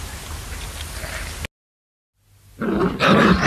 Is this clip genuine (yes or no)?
yes